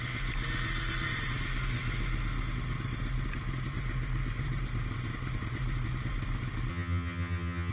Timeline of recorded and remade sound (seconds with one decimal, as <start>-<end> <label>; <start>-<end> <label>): 0.0-6.7 recorded; 6.7-7.7 remade

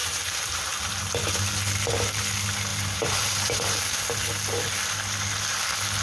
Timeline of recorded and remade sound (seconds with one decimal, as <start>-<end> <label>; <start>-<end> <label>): 0.0-0.8 remade; 0.8-2.7 recorded; 2.7-3.8 remade; 3.8-6.0 recorded

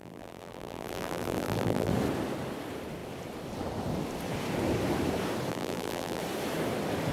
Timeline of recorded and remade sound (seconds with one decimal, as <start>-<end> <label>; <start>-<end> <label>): 0.0-1.9 remade; 1.9-5.5 recorded; 5.5-6.2 remade; 6.2-7.1 recorded

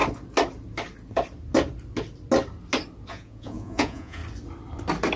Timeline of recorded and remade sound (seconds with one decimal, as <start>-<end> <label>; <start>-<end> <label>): 0.0-3.1 recorded; 3.1-4.2 remade; 4.2-5.2 recorded

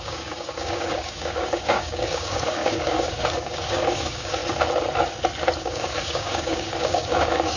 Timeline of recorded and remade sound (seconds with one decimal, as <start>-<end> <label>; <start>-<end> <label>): 0.0-4.4 remade; 4.4-5.6 recorded; 5.6-7.6 remade

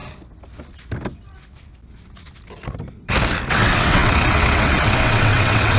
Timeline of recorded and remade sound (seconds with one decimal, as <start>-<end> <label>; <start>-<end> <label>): 0.0-3.5 recorded; 3.5-5.8 remade

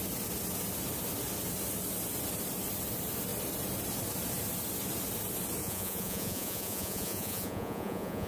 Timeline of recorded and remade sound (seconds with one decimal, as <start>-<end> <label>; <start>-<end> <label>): 0.0-5.6 recorded; 5.6-8.3 remade